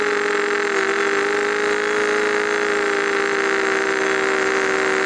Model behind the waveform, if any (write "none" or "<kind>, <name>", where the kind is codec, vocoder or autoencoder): none